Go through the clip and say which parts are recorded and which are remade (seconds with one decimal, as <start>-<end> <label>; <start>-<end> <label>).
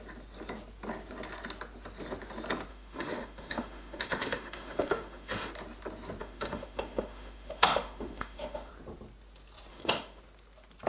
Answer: 0.0-2.7 recorded; 2.7-5.5 remade; 5.5-6.2 recorded; 6.2-8.7 remade; 8.7-9.7 recorded; 9.7-10.2 remade; 10.2-10.9 recorded